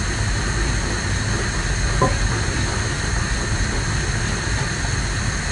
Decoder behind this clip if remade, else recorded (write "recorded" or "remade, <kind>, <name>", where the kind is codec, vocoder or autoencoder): recorded